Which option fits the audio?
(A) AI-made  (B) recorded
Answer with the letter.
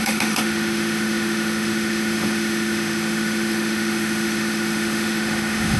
A